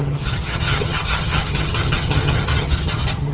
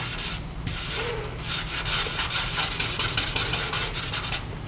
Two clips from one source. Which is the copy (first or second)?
first